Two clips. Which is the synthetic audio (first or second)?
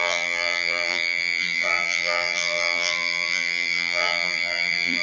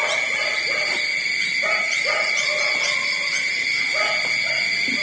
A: first